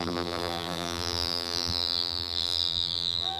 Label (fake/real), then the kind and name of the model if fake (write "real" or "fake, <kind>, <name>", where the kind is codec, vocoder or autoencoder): fake, vocoder, BigVGAN v2